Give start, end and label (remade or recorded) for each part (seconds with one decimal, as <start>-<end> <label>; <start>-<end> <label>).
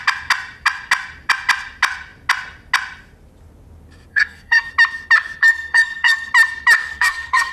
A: 0.0-4.1 recorded; 4.1-4.7 remade; 4.7-5.4 recorded; 5.4-6.3 remade; 6.3-6.8 recorded; 6.8-7.5 remade